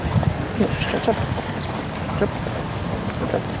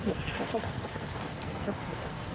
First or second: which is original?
first